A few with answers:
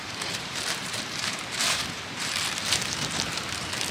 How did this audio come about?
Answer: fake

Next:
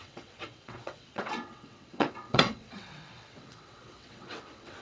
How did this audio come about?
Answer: fake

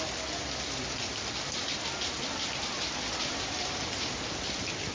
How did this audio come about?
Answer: fake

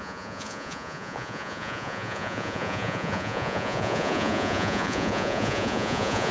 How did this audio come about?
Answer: fake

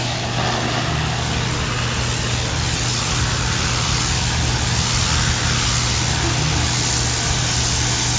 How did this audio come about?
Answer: real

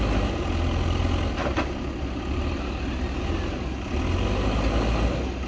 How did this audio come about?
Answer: real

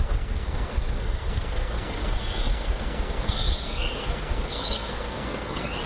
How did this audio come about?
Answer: fake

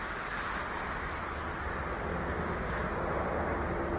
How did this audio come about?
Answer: real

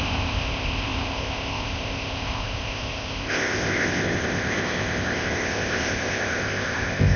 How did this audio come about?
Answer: fake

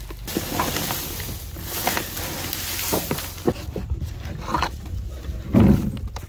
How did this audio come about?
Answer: real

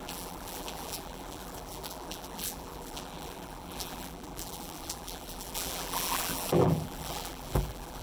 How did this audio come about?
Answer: fake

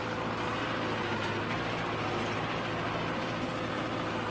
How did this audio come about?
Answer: real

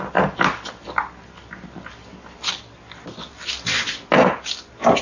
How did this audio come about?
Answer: real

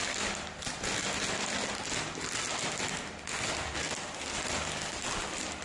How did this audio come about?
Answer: real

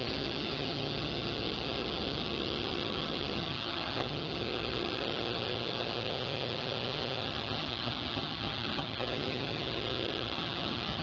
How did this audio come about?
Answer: fake